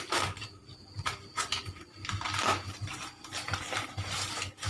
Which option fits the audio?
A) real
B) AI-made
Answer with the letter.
B